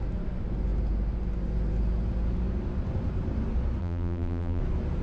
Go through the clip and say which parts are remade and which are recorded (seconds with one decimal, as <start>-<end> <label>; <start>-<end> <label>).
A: 0.0-3.8 recorded; 3.8-4.6 remade; 4.6-5.0 recorded